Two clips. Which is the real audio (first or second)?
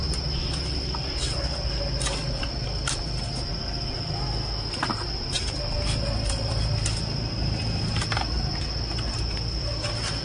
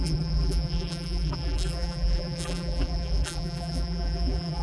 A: first